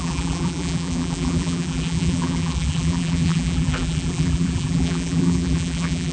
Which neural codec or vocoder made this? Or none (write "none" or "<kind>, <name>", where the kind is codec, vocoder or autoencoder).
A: vocoder, BigVGAN v2